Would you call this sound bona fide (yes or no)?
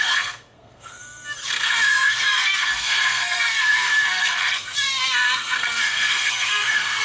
no